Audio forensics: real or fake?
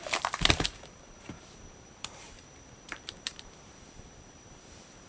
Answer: fake